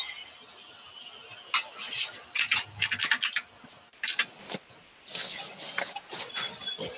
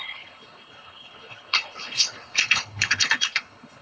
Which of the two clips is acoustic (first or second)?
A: first